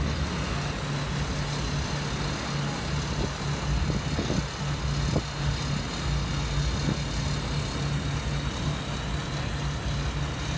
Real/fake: real